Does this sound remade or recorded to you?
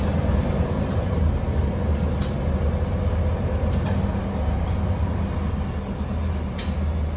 recorded